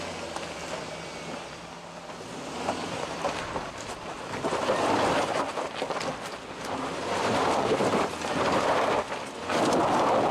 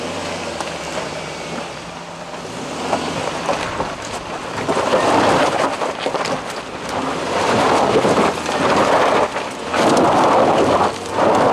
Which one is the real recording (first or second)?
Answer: first